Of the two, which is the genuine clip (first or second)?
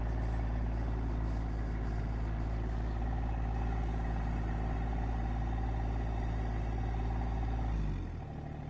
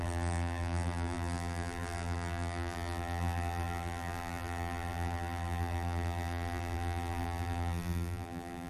first